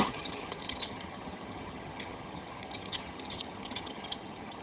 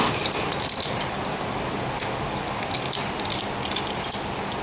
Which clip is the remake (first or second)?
first